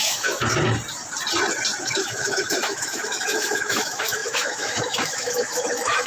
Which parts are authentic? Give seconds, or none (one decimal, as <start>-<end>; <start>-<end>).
0.4-1.8